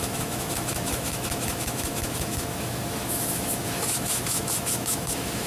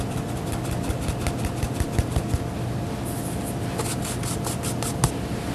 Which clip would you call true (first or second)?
second